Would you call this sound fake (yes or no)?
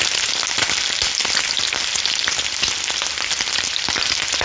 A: no